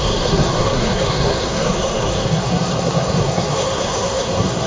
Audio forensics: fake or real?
fake